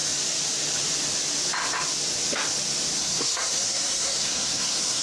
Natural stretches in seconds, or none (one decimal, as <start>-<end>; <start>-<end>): 0.0-3.0